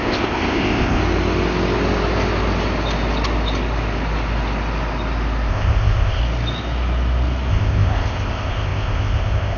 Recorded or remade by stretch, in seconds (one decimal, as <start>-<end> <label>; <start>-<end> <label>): 0.0-1.0 remade; 1.0-5.5 recorded; 5.5-6.2 remade; 6.2-7.5 recorded; 7.5-9.6 remade